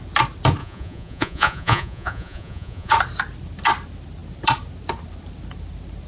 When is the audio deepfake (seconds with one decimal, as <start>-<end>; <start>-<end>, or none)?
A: 0.6-2.9